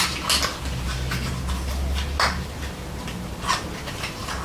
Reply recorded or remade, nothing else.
recorded